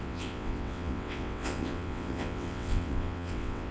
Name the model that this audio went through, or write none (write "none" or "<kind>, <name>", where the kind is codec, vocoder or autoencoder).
vocoder, WaveNeXt